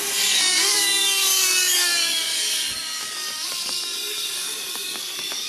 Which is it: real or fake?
fake